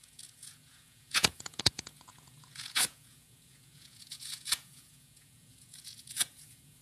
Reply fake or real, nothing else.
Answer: fake